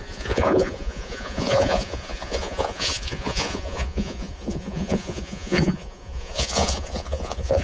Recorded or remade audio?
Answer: remade